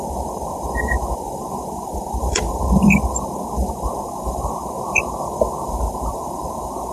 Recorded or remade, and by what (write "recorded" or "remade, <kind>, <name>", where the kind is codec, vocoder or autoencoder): remade, vocoder, BigVGAN v2